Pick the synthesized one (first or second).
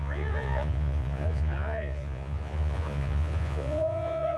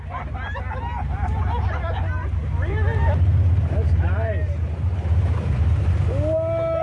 first